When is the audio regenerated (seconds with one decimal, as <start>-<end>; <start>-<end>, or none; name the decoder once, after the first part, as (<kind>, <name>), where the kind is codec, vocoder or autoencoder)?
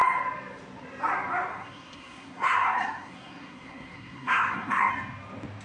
1.5-4.9 (codec, SNAC)